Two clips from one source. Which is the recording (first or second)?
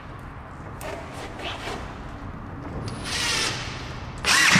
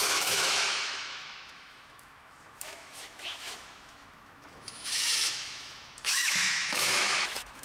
first